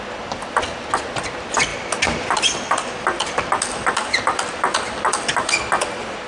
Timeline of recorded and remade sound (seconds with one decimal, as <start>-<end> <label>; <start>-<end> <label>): 0.0-1.7 recorded; 1.7-5.5 remade; 5.5-6.3 recorded